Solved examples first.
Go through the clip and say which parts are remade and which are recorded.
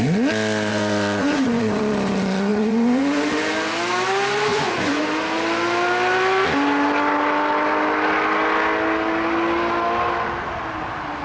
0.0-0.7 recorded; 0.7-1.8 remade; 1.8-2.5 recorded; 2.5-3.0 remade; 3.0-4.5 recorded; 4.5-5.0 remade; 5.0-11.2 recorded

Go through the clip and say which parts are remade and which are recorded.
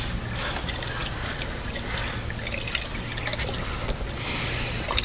0.0-5.0 recorded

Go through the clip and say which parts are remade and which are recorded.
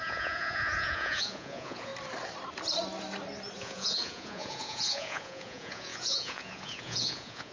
0.0-1.9 remade; 1.9-3.6 recorded; 3.6-7.5 remade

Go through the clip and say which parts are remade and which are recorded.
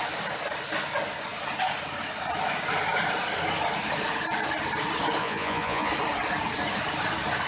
0.0-5.2 recorded; 5.2-5.9 remade; 5.9-7.5 recorded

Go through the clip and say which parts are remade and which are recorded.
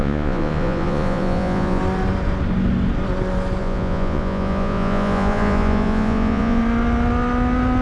0.0-1.8 remade; 1.8-3.6 recorded; 3.6-6.6 remade; 6.6-7.8 recorded